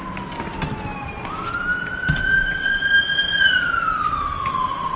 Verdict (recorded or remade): recorded